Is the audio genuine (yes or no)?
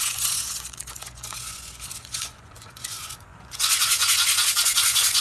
no